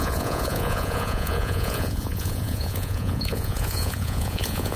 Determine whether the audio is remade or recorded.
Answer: remade